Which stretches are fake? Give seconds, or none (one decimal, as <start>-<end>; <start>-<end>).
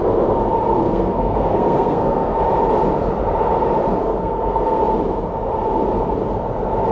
0.8-2.4; 4.0-4.8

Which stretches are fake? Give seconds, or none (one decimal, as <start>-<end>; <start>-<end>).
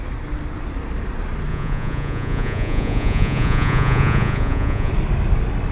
1.5-4.9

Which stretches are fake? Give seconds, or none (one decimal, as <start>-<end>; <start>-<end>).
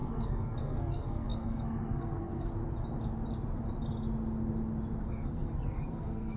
0.0-2.5; 5.0-6.4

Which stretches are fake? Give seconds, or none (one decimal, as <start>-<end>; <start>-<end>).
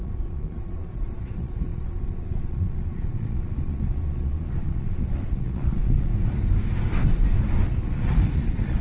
0.0-6.1; 7.7-8.8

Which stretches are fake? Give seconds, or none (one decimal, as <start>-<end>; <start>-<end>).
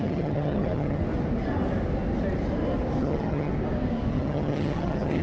0.0-1.0; 3.0-3.5; 4.1-5.2